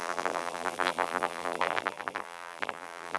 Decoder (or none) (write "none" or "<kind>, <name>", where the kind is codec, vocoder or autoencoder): vocoder, BigVGAN v2